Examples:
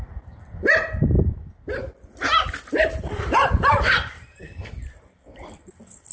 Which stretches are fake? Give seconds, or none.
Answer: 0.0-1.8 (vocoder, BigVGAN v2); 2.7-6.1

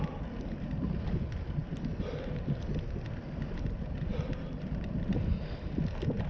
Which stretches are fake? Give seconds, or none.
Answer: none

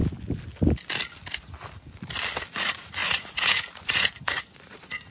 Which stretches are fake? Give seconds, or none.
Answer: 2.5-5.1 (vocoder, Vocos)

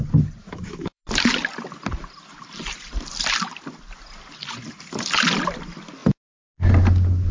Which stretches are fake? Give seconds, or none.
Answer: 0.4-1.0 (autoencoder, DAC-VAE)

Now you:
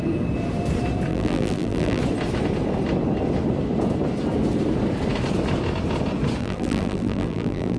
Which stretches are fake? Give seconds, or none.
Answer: 1.1-2.0 (vocoder, BigVGAN v2); 6.4-7.8

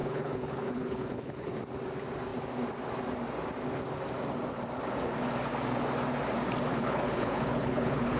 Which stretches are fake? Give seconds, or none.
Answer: 0.0-1.6 (codec, HILCodec); 6.7-8.2

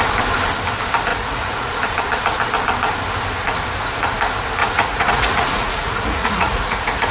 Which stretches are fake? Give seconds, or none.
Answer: 1.1-1.7 (vocoder, Vocos); 4.6-7.1

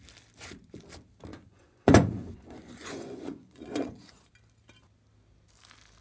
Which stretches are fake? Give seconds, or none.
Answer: 1.3-4.3 (vocoder, Vocos)